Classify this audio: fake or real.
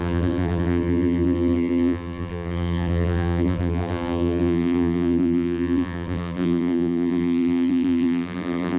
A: fake